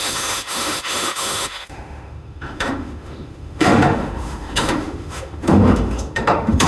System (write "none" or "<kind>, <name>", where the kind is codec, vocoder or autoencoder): autoencoder, DAC-VAE